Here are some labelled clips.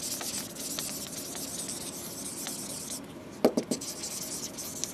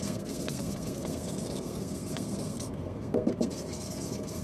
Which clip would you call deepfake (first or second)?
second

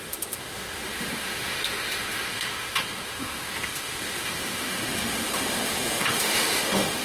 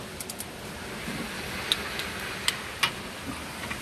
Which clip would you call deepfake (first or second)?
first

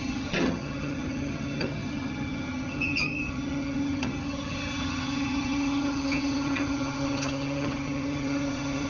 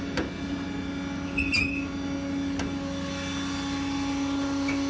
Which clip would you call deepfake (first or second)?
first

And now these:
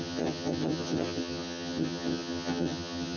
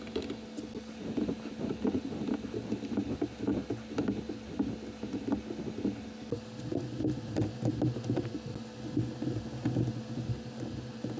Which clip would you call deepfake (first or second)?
first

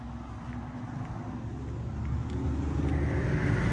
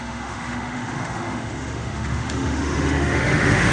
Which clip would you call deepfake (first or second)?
second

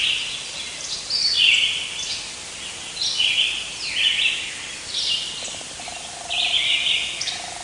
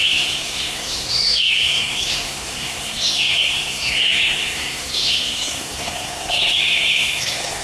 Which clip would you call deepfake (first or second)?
second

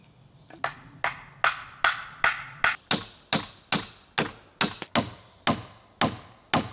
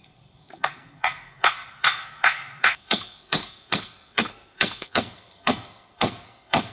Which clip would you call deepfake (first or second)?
second